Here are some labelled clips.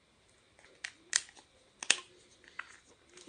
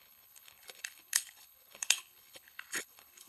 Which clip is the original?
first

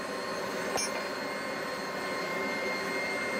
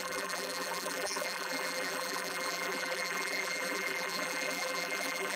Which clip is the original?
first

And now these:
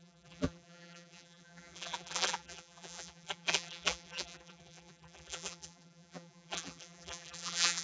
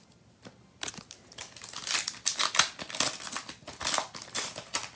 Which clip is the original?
second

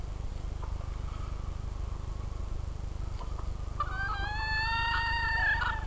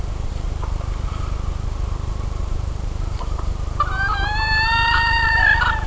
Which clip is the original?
first